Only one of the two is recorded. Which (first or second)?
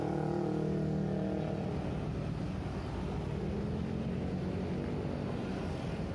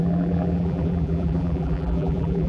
first